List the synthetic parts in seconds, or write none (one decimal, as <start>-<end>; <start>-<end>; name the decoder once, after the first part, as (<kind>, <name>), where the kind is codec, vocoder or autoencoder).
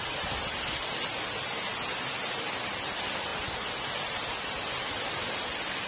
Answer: none